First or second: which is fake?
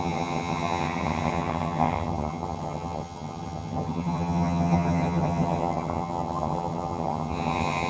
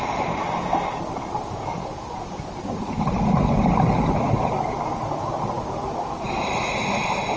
first